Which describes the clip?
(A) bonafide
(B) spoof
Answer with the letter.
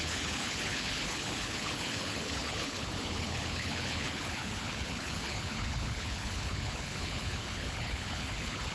B